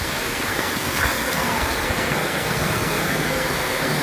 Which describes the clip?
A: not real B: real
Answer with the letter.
A